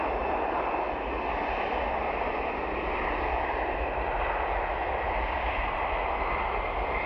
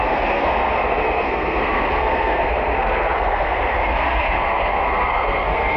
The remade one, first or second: second